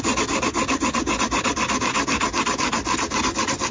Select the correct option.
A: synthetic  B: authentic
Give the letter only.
B